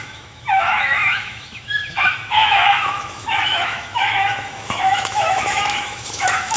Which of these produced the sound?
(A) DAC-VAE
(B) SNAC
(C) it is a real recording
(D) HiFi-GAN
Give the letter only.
A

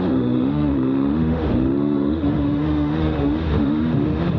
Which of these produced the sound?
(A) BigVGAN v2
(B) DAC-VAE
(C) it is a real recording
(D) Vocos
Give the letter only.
B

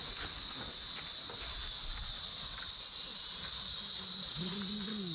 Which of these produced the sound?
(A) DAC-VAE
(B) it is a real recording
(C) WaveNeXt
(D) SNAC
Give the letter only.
B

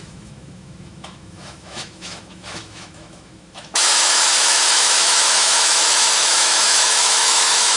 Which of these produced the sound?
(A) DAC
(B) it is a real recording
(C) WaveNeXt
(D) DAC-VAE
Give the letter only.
D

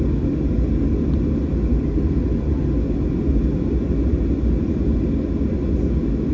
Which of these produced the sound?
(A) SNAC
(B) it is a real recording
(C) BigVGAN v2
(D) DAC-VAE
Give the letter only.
B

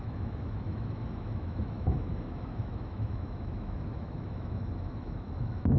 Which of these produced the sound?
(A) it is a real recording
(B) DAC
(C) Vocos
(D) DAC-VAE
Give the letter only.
D